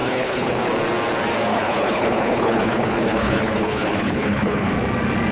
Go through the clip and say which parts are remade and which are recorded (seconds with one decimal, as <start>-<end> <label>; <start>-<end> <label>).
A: 0.0-0.6 remade; 0.6-1.5 recorded; 1.5-4.7 remade; 4.7-5.3 recorded